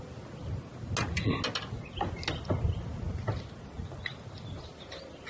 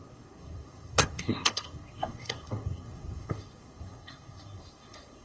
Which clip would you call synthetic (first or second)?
second